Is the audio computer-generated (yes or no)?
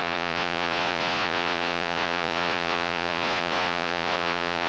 yes